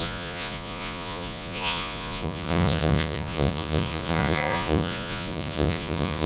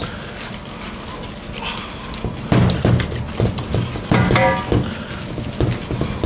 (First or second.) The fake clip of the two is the first